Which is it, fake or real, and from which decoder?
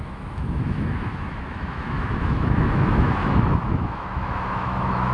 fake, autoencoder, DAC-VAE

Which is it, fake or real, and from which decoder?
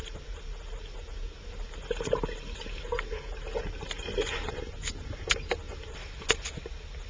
real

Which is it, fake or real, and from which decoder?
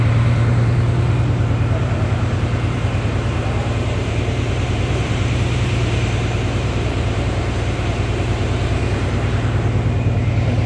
fake, vocoder, BigVGAN v2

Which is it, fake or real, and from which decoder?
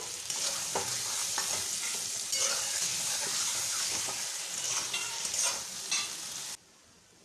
real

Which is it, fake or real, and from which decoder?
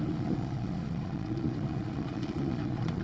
fake, vocoder, Vocos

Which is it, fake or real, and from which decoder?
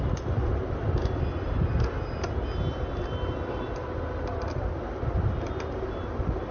real